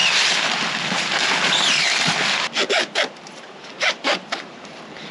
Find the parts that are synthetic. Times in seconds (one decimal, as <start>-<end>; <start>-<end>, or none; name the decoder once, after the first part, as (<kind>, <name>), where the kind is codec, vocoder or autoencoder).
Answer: 3.1-5.1 (vocoder, BigVGAN v2)